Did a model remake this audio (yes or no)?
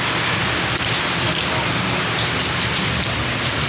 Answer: no